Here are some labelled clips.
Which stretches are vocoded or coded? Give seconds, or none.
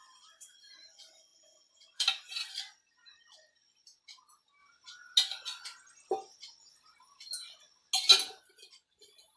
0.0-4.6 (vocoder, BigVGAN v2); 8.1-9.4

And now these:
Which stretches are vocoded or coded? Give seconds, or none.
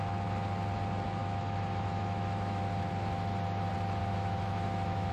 1.2-2.6 (autoencoder, DAC-VAE); 4.0-5.1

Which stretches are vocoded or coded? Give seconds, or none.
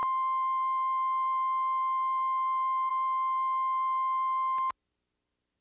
none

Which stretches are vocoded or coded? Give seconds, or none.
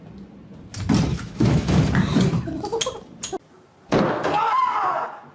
1.1-1.8 (autoencoder, DAC-VAE)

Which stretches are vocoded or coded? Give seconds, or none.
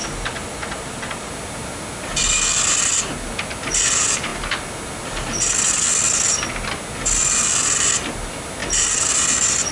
0.0-1.3 (vocoder, BigVGAN v2); 8.6-9.1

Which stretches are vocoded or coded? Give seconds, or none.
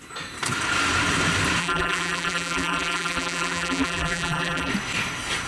1.6-4.7 (vocoder, BigVGAN v2)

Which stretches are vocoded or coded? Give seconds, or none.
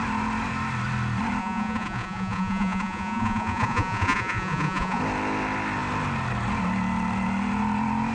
1.4-5.0 (vocoder, Vocos)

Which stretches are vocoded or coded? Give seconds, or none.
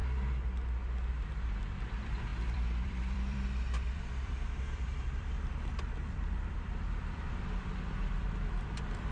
1.1-9.1 (vocoder, BigVGAN v2)